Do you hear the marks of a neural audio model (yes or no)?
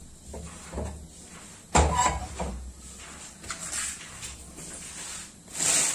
no